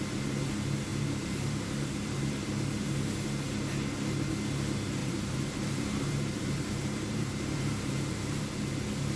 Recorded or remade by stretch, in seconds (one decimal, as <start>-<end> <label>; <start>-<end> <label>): 0.0-0.9 recorded; 0.9-2.2 remade; 2.2-5.0 recorded; 5.0-8.7 remade; 8.7-9.2 recorded